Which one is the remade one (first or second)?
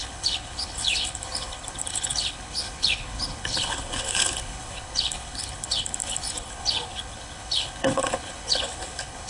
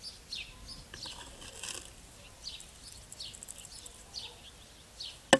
first